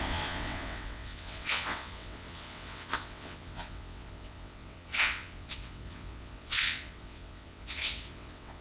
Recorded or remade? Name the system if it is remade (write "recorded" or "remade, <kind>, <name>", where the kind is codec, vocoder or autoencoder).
remade, vocoder, WaveNeXt